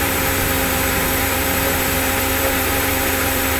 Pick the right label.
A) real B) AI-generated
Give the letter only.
B